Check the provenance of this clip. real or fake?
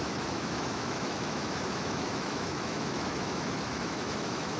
fake